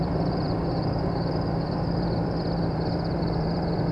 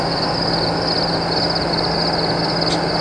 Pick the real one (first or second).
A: second